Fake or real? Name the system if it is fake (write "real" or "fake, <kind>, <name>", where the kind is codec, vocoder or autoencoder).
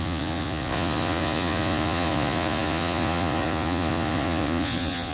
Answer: fake, vocoder, Vocos